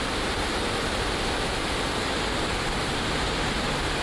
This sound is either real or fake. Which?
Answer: fake